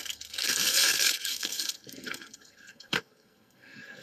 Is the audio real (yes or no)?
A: no